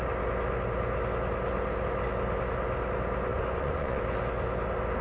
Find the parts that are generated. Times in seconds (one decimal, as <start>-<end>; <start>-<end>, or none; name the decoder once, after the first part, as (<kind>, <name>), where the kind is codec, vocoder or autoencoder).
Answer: 3.3-4.0 (vocoder, Vocos)